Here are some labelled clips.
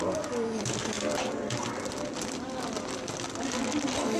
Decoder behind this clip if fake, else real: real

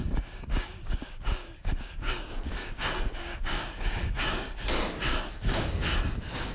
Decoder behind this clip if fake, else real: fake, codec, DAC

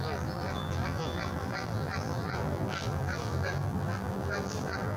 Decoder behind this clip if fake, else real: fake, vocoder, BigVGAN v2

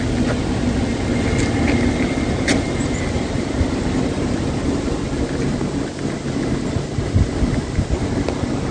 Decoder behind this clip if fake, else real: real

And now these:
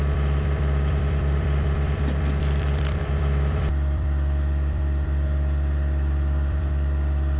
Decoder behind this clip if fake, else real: fake, vocoder, BigVGAN v2